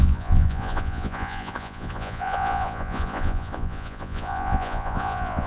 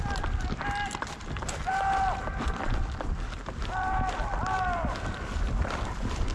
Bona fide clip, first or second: second